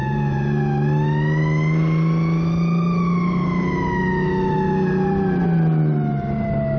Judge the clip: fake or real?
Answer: real